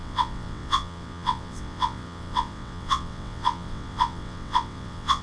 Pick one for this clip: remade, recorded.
remade